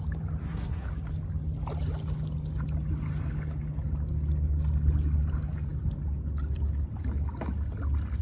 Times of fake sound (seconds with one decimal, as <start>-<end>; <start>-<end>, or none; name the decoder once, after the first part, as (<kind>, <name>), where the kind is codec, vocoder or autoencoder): 0.4-0.9 (codec, SNAC)

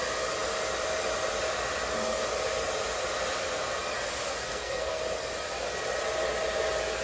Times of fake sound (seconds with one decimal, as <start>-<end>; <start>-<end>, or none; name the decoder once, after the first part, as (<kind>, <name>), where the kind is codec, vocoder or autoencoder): 4.5-5.0 (codec, SNAC)